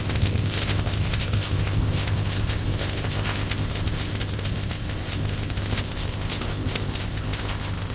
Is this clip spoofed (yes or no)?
yes